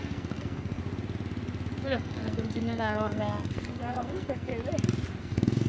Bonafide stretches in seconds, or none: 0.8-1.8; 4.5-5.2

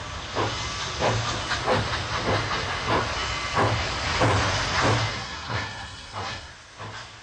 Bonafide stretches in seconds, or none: 0.0-5.1; 6.5-7.2

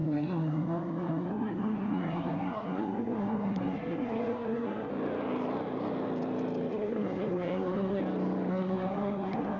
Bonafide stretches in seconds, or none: 4.9-6.7; 8.0-8.5

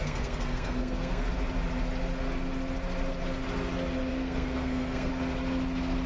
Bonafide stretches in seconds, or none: 1.3-4.1; 5.1-6.1

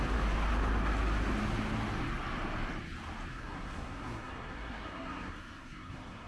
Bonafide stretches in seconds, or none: 0.0-3.3

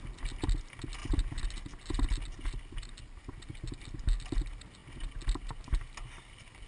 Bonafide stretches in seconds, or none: 0.0-6.7

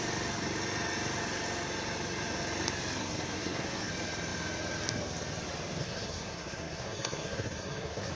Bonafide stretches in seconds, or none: 0.0-3.0; 3.9-5.8

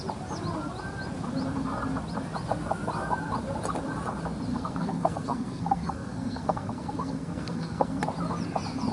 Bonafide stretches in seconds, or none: 0.0-4.5; 8.0-8.9